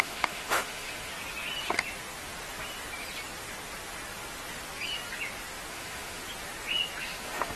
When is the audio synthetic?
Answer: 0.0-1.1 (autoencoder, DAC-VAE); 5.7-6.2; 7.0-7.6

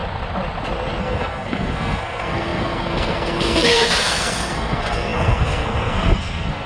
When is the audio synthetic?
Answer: 1.0-6.7 (codec, SNAC)